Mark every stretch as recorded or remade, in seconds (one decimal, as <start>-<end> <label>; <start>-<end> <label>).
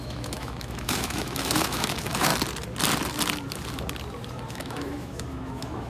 0.0-2.3 remade; 2.3-4.5 recorded; 4.5-5.9 remade